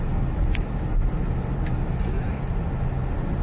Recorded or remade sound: recorded